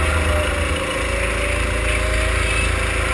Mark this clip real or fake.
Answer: real